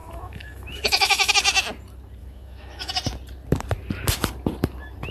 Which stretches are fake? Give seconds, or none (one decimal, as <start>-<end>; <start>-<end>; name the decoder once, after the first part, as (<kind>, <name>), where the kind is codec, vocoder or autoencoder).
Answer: 0.0-1.3 (autoencoder, DAC-VAE); 2.2-2.9